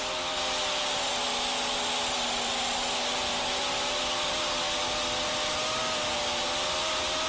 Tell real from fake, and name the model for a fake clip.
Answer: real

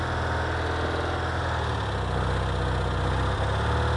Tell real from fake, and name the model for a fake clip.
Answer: real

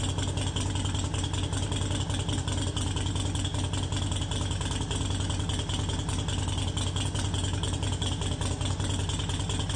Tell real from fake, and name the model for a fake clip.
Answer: real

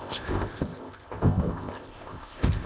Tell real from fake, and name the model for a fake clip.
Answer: fake, codec, ZipCodec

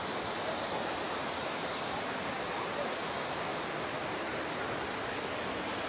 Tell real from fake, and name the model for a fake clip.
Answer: real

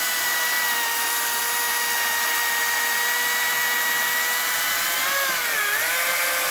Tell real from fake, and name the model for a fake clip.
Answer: real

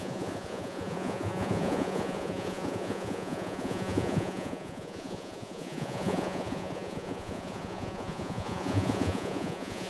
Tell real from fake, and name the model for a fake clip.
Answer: fake, vocoder, Vocos